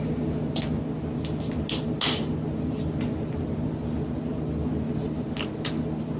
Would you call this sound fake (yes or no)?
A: no